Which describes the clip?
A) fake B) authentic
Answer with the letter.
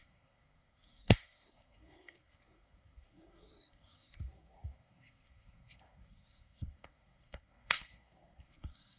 A